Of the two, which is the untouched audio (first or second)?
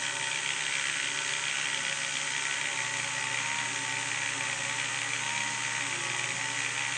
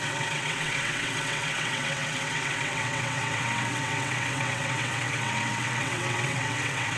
first